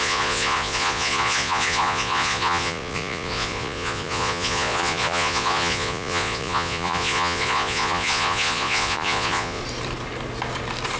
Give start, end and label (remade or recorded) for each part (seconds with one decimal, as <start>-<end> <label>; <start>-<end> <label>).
0.0-9.6 remade; 9.6-11.0 recorded